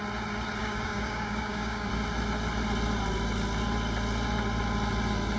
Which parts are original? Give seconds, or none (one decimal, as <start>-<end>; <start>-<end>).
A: 0.0-0.6; 1.9-5.4